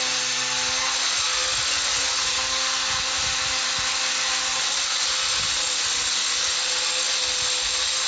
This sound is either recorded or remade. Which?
recorded